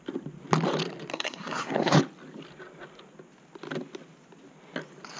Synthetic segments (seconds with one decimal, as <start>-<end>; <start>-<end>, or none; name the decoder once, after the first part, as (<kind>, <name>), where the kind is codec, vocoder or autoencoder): 1.1-2.0 (codec, SNAC)